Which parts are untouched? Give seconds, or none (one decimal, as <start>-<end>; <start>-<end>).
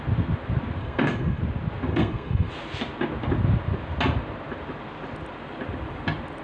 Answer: 0.0-0.8; 1.4-1.9; 2.5-6.4